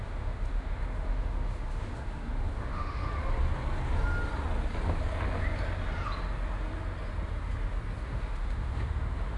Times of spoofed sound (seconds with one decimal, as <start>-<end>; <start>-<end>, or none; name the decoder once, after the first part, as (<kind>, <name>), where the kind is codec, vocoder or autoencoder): 0.0-3.1 (autoencoder, DAC-VAE); 8.0-9.4